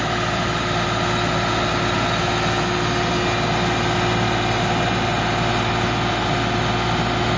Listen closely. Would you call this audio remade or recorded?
recorded